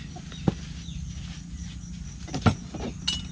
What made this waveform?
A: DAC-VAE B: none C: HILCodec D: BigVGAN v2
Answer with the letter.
B